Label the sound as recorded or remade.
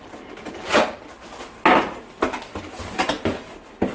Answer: recorded